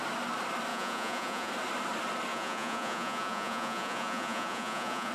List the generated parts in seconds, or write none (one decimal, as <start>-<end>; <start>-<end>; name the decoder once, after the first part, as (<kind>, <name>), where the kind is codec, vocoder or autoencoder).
0.7-1.5 (vocoder, Vocos); 2.3-5.1